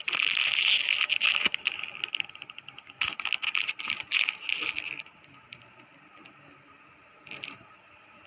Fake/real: real